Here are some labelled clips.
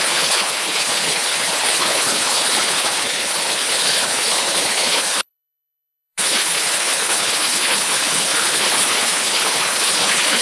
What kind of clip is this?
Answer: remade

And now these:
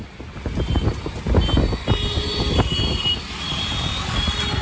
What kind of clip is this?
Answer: recorded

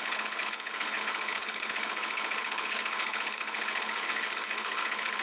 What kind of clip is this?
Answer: remade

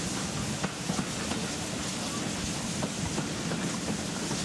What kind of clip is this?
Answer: recorded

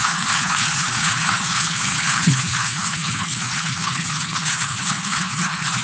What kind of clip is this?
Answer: remade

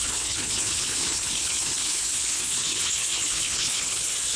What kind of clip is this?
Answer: remade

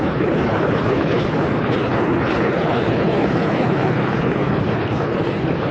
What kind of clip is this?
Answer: remade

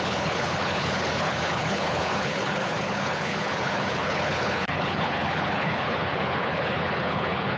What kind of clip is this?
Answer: remade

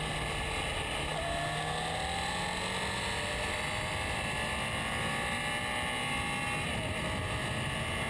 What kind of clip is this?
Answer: recorded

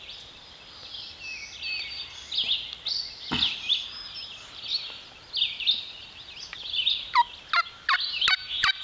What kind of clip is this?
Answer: recorded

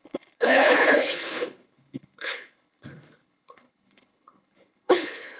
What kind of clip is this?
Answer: remade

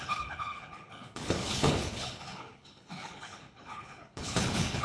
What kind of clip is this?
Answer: remade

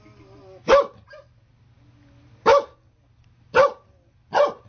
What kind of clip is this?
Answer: recorded